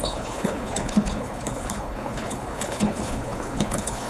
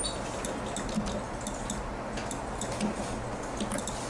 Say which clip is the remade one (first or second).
first